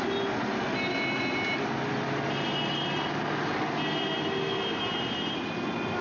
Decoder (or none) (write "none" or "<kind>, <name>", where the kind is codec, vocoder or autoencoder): none